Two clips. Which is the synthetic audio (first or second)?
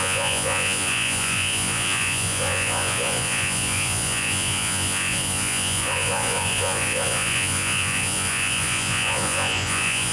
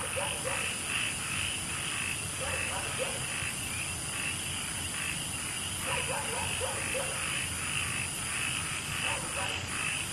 first